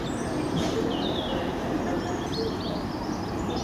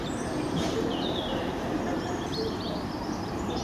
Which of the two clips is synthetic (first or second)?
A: second